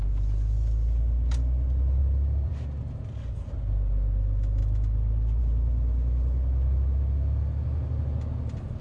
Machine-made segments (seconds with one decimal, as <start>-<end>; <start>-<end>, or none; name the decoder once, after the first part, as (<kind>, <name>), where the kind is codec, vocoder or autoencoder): 2.0-2.5 (vocoder, BigVGAN v2)